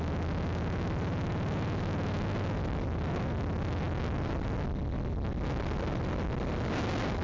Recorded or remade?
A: recorded